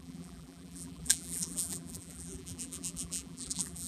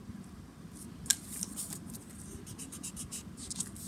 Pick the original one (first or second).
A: second